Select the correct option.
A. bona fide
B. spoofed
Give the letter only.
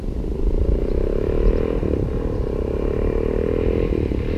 A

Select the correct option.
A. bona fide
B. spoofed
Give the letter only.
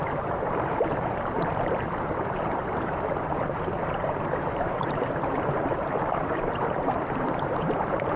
B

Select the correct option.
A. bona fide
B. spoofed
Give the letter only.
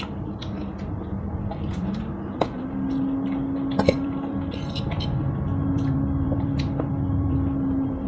B